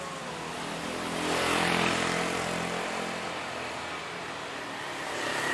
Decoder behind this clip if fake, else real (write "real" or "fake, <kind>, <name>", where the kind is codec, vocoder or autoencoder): fake, vocoder, BigVGAN v2